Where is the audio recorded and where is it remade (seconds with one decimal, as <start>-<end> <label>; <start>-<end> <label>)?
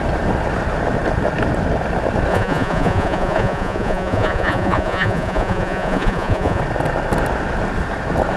0.0-2.3 recorded; 2.3-6.6 remade; 6.6-8.4 recorded